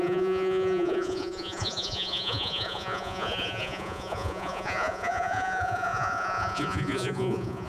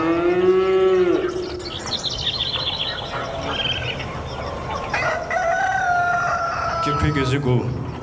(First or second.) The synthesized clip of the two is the first